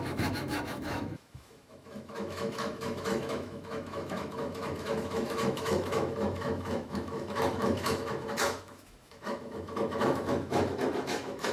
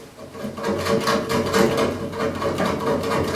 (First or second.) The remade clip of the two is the first